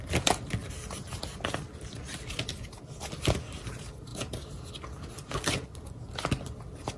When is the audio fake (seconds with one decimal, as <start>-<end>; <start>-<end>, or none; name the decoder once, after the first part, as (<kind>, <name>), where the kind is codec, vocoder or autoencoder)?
none